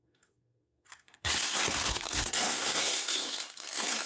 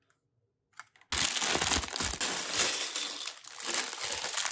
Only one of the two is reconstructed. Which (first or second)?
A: first